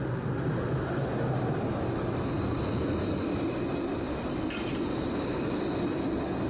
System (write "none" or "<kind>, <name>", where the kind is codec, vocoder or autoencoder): none